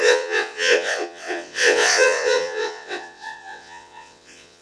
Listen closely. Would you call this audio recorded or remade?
remade